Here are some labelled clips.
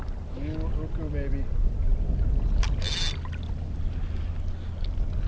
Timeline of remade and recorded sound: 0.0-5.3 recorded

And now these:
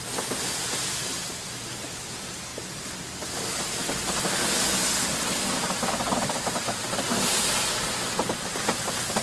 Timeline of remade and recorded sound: 0.0-2.5 remade; 2.5-5.0 recorded; 5.0-7.1 remade; 7.1-8.4 recorded; 8.4-9.2 remade